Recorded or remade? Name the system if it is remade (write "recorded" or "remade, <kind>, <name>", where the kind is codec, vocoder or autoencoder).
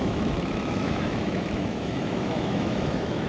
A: remade, autoencoder, DAC-VAE